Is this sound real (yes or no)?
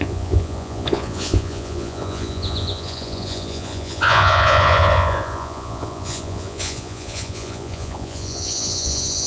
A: no